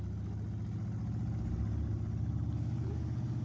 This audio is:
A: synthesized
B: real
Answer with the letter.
B